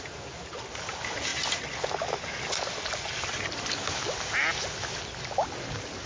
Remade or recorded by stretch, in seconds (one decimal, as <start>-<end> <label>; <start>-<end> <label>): 0.0-6.1 recorded